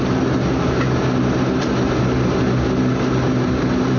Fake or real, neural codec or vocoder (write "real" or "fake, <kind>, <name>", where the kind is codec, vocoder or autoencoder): real